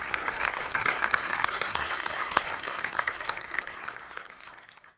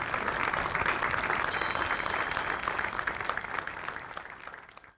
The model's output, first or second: first